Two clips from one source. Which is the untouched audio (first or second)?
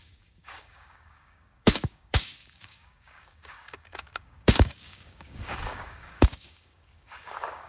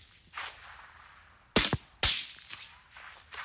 second